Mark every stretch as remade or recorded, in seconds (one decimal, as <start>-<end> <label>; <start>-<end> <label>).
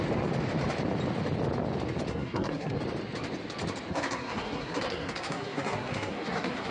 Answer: 0.0-2.1 recorded; 2.1-2.8 remade; 2.8-3.9 recorded; 3.9-6.7 remade